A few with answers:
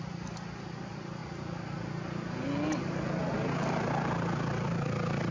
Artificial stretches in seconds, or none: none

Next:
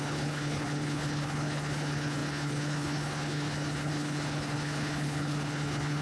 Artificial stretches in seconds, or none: 0.0-6.0 (codec, HILCodec)

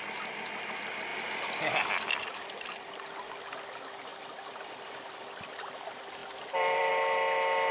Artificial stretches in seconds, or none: 4.1-5.4 (vocoder, BigVGAN v2); 6.2-6.9

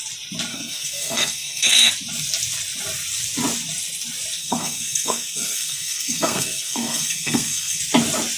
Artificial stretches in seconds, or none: 0.5-1.9 (codec, SNAC); 4.4-7.8

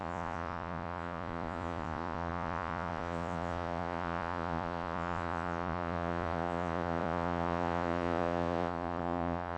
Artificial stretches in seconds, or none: 0.0-9.6 (vocoder, Vocos)